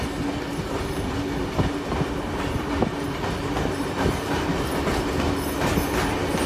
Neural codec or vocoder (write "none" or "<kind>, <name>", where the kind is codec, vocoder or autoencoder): none